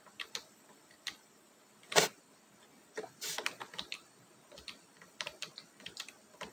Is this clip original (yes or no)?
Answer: yes